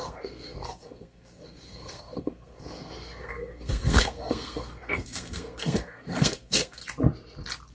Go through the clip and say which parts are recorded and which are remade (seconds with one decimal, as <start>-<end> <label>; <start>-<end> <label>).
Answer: 0.0-6.8 remade; 6.8-7.7 recorded

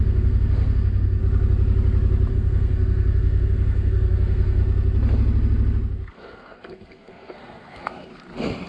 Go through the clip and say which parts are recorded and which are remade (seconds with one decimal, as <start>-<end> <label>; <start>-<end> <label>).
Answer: 0.0-1.2 remade; 1.2-2.3 recorded; 2.3-4.6 remade; 4.6-6.1 recorded; 6.1-8.1 remade; 8.1-8.7 recorded

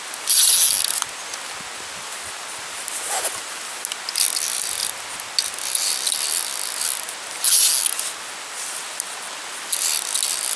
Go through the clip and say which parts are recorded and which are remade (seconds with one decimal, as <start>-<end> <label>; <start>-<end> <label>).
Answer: 0.0-10.6 recorded